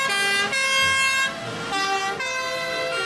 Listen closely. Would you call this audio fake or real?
real